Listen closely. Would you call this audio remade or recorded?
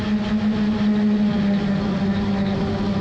recorded